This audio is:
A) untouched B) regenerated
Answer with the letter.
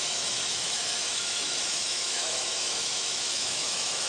B